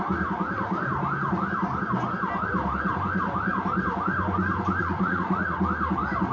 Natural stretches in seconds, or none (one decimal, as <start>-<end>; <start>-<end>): 0.0-4.8; 5.6-6.3